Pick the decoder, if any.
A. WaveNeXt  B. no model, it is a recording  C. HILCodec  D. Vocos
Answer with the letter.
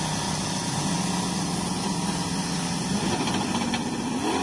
B